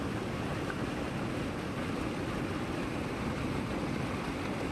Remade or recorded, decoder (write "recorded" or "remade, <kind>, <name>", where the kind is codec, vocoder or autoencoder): recorded